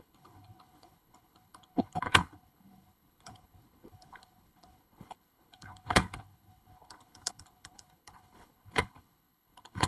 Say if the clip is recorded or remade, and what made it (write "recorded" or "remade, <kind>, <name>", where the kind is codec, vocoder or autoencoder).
remade, codec, HILCodec